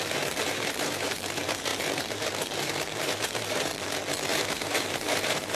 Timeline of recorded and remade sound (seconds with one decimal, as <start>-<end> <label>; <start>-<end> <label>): 0.0-3.7 remade; 3.7-4.3 recorded; 4.3-5.5 remade